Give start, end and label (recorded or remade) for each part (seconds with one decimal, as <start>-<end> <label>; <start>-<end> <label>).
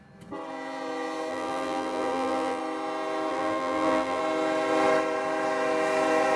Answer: 0.0-1.3 recorded; 1.3-2.6 remade; 2.6-3.3 recorded; 3.3-4.2 remade; 4.2-6.4 recorded